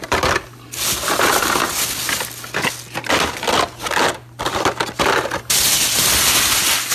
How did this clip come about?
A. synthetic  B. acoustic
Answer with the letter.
B